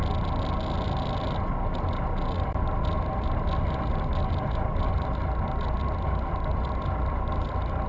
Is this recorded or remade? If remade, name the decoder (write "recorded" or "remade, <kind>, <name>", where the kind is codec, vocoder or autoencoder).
recorded